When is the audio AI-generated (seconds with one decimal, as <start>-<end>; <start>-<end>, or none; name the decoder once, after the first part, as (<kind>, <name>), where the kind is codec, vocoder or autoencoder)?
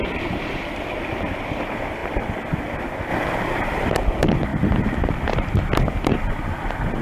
none